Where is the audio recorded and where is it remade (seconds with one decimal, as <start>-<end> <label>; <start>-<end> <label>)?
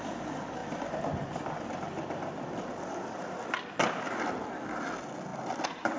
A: 0.0-6.0 recorded